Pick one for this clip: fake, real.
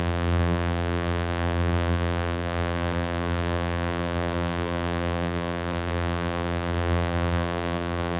fake